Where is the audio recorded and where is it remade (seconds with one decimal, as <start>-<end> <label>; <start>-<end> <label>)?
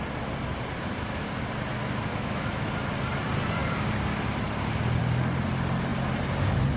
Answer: 0.0-2.1 recorded; 2.1-2.7 remade; 2.7-6.8 recorded